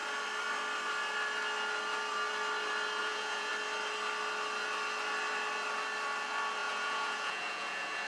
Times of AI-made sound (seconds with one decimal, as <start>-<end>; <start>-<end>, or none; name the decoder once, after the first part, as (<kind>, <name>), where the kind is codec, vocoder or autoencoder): 3.0-3.5 (vocoder, Vocos); 6.6-8.1